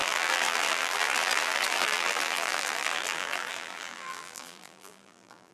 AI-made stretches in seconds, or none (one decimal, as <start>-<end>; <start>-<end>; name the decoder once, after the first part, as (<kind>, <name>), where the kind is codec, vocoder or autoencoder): 0.0-5.5 (vocoder, BigVGAN v2)